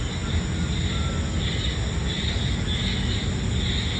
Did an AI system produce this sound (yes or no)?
no